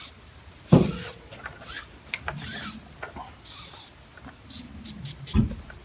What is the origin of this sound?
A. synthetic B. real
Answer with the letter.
B